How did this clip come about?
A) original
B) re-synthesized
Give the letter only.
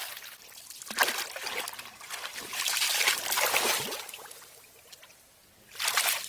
A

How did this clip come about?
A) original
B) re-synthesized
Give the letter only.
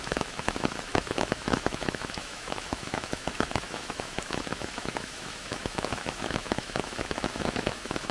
B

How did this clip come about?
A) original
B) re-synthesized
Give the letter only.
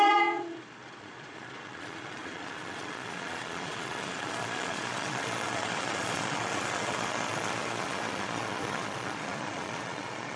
B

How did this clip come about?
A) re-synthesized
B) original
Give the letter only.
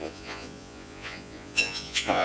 A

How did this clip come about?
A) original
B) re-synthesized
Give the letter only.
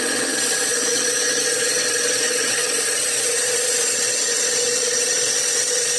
B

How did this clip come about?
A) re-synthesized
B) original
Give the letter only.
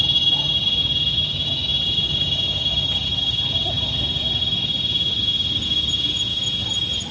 B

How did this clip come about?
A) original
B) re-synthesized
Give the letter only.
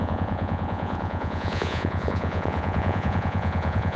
B